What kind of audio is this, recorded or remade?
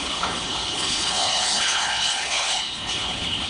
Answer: remade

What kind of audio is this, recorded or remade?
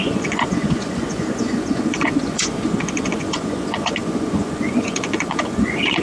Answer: remade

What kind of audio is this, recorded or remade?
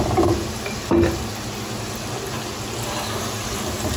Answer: recorded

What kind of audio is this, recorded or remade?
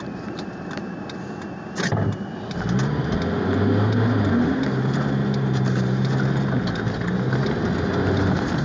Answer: recorded